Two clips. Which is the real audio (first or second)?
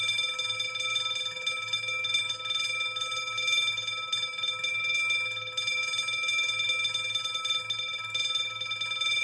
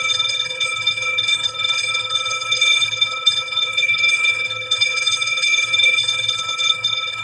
first